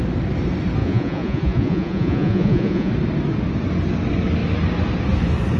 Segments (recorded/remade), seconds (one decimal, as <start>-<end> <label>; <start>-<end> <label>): 0.0-0.8 recorded; 0.8-2.9 remade; 2.9-5.6 recorded